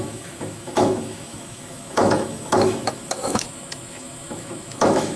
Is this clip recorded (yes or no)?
no